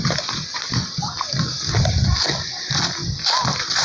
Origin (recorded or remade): recorded